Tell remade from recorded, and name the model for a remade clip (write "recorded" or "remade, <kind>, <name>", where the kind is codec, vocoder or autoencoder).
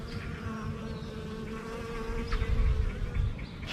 recorded